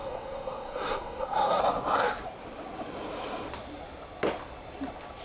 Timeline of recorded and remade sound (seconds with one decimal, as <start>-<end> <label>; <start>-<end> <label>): 0.0-1.6 remade; 1.6-5.2 recorded